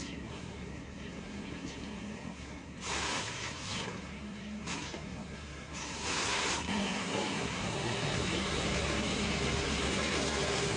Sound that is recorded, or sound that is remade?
remade